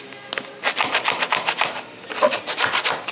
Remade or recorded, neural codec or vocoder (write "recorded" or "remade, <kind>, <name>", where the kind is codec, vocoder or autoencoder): recorded